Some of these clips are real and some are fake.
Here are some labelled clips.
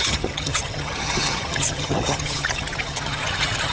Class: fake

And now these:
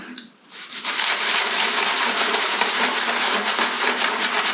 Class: fake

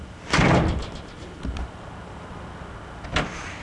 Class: real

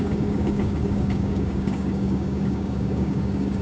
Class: fake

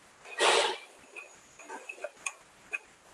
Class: real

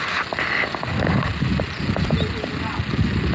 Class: real